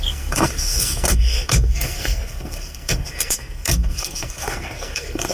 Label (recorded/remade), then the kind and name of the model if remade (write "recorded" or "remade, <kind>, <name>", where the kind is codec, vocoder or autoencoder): remade, codec, SNAC